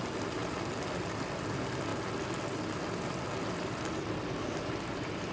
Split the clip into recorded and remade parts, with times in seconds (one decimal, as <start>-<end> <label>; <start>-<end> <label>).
0.0-1.9 remade; 1.9-4.4 recorded; 4.4-5.3 remade